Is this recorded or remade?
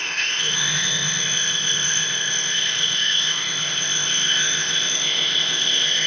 remade